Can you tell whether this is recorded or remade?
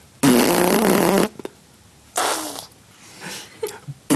recorded